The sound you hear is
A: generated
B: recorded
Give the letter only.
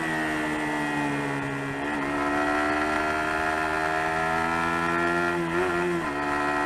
B